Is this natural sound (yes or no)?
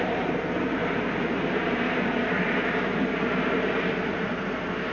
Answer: no